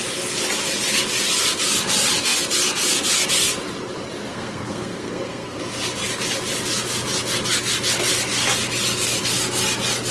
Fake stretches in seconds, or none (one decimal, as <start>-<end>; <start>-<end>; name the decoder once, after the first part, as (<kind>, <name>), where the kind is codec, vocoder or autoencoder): 4.3-5.6 (codec, SNAC)